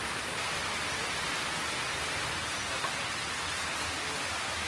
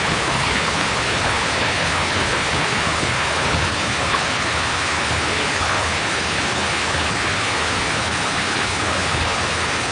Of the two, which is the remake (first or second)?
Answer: second